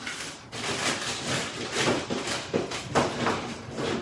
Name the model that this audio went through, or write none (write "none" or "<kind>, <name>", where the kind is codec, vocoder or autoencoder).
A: none